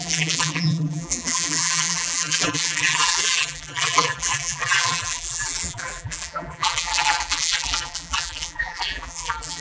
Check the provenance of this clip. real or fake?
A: fake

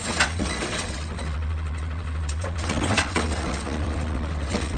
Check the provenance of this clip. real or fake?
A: fake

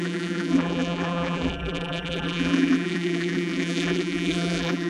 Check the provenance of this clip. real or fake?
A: fake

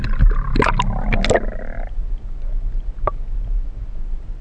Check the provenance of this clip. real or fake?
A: real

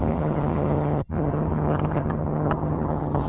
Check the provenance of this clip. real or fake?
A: fake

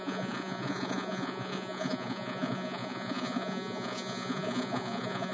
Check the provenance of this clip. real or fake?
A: fake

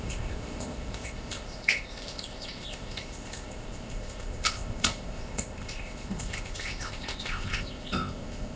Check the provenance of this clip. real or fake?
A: fake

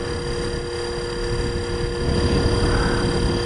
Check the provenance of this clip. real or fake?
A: real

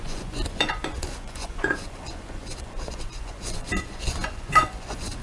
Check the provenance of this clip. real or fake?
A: fake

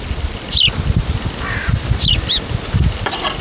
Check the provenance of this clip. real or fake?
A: real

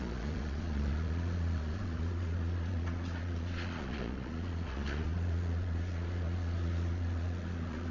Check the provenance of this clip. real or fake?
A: fake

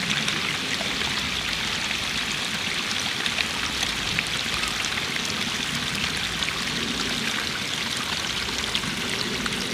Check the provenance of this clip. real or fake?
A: real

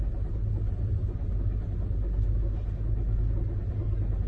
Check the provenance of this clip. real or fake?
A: real